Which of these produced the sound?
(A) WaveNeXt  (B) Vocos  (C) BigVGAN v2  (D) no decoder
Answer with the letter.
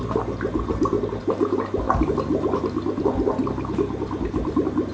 D